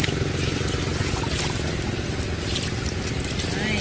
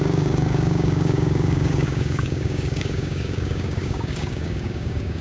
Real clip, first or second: first